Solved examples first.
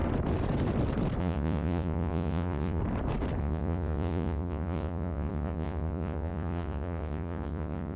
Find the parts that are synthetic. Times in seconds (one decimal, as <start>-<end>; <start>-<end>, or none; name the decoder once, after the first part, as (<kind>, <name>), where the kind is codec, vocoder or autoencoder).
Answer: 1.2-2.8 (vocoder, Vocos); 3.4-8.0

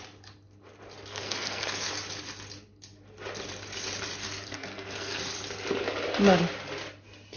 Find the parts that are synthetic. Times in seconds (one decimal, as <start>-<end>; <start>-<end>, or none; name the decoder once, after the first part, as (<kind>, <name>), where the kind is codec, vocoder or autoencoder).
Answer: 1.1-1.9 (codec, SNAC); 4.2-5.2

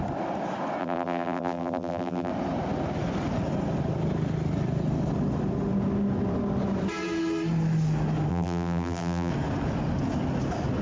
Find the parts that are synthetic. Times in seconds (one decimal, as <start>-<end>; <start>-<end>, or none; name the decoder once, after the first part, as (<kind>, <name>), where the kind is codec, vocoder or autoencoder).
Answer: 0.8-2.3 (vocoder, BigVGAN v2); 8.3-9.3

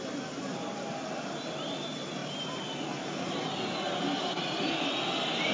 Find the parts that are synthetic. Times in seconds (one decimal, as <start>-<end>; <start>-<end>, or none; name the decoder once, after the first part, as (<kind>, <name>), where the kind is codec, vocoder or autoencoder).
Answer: none

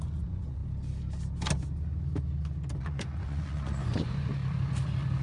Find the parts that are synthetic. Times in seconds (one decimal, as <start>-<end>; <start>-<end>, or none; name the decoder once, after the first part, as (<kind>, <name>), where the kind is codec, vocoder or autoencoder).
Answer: 0.0-0.6 (vocoder, Vocos); 2.8-4.4

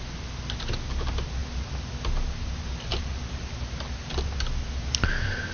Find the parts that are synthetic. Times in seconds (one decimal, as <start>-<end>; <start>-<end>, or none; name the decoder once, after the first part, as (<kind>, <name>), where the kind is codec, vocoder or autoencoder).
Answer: none

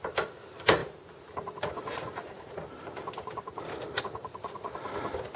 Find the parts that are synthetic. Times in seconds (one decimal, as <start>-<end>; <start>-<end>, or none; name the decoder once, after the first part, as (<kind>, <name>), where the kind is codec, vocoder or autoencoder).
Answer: 0.8-4.0 (vocoder, BigVGAN v2)